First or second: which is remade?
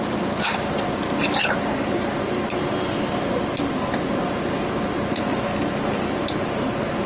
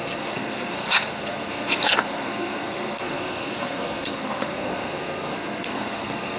second